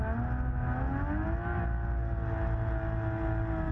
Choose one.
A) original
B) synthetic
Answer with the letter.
A